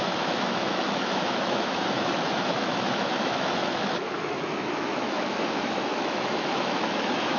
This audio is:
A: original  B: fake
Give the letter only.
B